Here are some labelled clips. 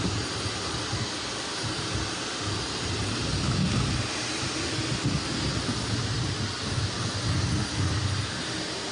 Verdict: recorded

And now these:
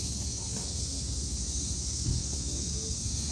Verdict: remade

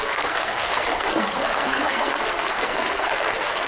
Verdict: remade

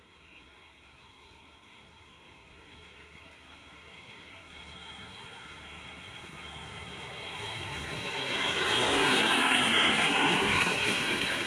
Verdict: remade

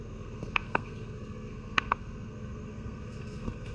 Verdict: remade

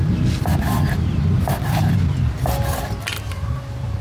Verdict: recorded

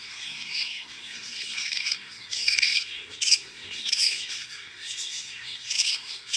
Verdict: remade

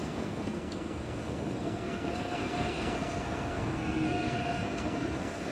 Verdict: remade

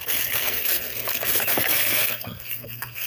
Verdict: remade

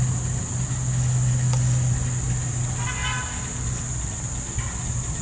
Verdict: recorded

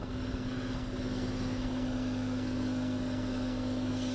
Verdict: remade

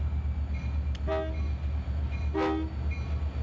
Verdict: recorded